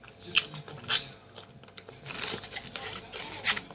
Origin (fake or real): real